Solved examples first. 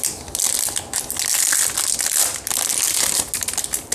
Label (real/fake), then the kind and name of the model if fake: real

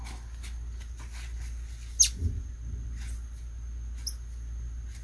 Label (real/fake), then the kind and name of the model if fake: real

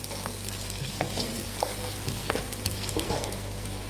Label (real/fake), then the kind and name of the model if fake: fake, codec, SNAC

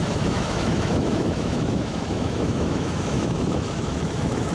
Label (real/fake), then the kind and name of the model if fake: fake, autoencoder, DAC-VAE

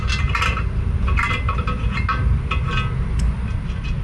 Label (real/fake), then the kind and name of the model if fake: real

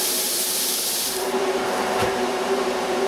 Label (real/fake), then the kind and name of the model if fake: fake, vocoder, BigVGAN v2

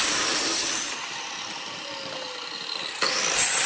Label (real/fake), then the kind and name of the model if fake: real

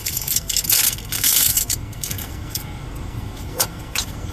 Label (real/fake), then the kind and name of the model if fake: fake, codec, SNAC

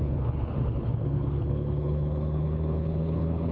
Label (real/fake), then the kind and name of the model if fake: fake, codec, HILCodec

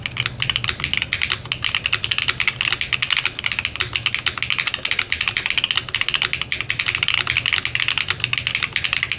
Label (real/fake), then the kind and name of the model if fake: real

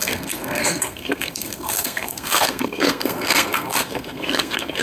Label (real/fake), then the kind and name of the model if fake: fake, codec, SNAC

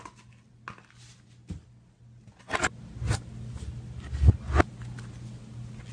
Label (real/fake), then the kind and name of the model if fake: real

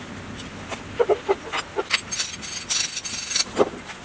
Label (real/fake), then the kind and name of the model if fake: real